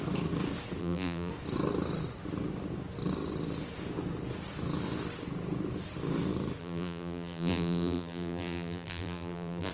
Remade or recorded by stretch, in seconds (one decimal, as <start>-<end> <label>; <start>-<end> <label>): 0.0-0.8 recorded; 0.8-1.3 remade; 1.3-6.6 recorded; 6.6-9.7 remade